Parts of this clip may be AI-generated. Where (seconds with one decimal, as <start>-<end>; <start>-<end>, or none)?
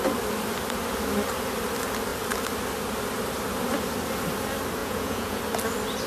4.8-5.4